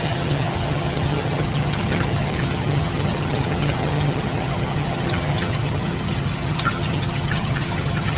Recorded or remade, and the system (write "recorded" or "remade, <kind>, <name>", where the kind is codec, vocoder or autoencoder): remade, vocoder, HiFi-GAN